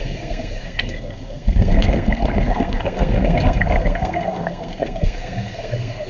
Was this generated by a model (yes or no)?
yes